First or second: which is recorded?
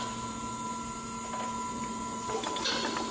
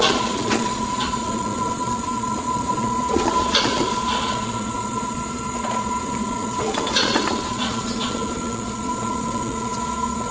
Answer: first